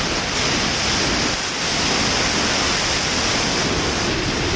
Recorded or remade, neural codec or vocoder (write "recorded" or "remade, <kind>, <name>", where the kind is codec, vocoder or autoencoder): recorded